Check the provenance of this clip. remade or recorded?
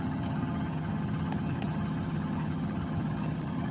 remade